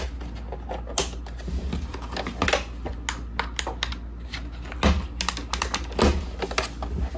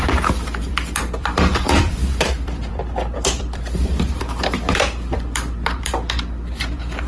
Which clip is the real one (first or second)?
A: first